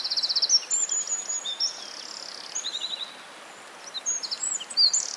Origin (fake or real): real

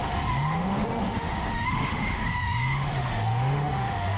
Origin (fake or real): fake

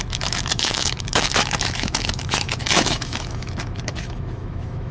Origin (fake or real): fake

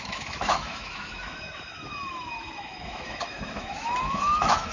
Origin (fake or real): fake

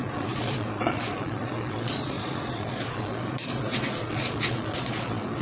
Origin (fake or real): fake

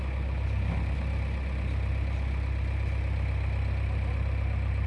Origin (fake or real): real